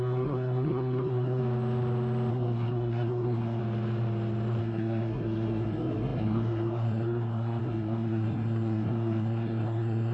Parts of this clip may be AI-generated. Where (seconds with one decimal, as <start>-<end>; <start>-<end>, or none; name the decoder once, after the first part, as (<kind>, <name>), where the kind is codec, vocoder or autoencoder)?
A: 0.0-1.4 (codec, SNAC); 2.3-3.6; 4.6-10.1